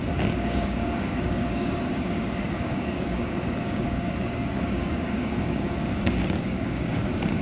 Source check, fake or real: fake